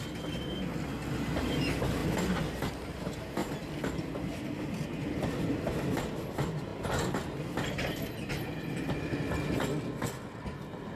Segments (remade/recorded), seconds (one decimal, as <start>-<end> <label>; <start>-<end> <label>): 0.0-11.0 recorded